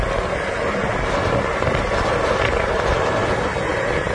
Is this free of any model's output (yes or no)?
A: yes